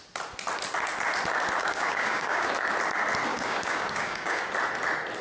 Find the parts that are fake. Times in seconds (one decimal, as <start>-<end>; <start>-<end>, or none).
1.6-2.5; 3.3-4.5